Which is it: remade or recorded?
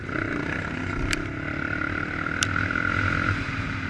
recorded